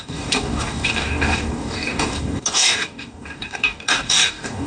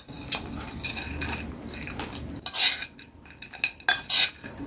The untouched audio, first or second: second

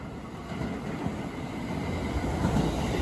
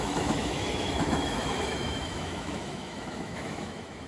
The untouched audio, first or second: first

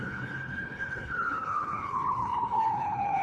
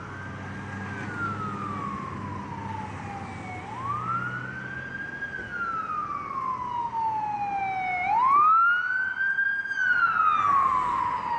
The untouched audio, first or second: second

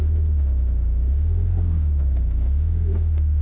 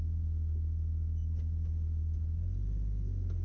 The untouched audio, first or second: second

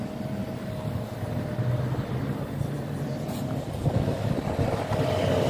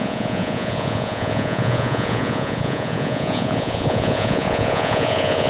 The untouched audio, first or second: first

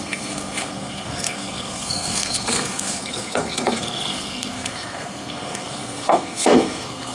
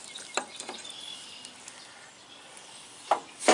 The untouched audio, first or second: second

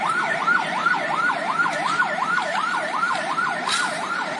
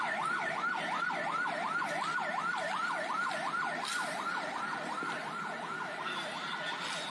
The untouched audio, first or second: second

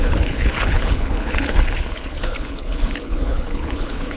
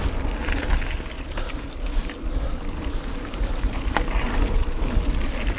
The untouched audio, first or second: second